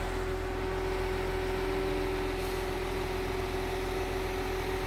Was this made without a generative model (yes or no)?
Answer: yes